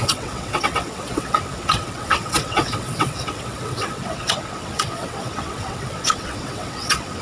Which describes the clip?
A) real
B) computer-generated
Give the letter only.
B